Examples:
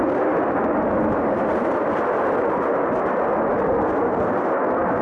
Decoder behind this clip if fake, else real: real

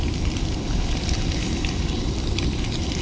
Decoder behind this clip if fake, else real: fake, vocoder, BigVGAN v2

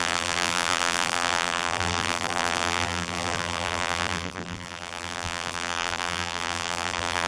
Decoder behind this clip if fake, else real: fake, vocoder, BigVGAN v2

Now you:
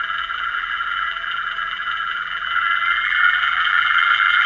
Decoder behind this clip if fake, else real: fake, vocoder, BigVGAN v2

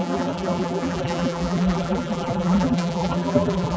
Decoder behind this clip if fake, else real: fake, vocoder, BigVGAN v2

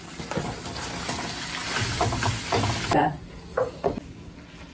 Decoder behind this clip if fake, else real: real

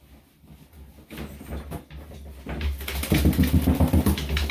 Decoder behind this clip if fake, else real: real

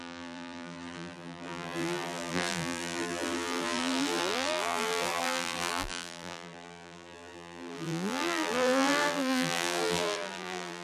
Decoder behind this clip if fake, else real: fake, vocoder, BigVGAN v2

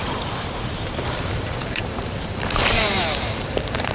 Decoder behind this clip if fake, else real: fake, vocoder, BigVGAN v2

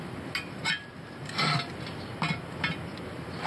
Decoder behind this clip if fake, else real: real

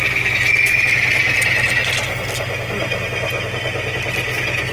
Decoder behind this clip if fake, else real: real